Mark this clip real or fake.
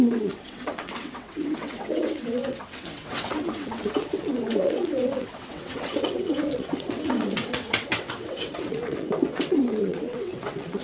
fake